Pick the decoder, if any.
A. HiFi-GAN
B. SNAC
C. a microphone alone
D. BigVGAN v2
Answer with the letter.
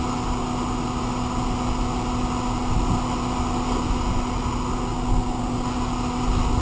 C